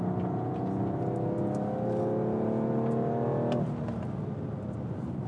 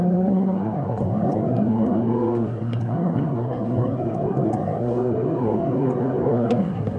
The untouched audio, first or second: first